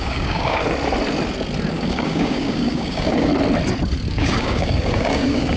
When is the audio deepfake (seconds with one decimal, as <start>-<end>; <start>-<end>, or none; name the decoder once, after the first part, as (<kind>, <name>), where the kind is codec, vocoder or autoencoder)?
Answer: 0.0-0.6 (codec, DAC); 1.7-3.3; 4.1-5.6